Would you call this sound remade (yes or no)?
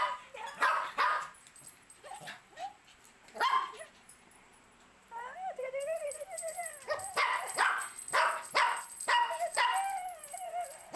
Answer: yes